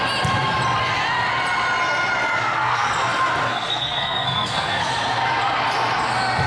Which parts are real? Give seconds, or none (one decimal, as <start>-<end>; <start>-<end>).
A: 0.0-2.4; 2.9-3.5; 4.9-6.5